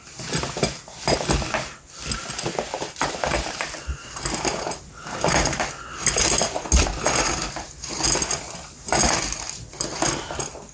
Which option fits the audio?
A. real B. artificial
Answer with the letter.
A